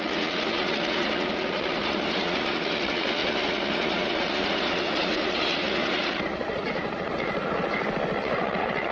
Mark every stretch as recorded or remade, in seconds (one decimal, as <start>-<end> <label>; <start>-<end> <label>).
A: 0.0-7.6 remade; 7.6-8.2 recorded; 8.2-8.9 remade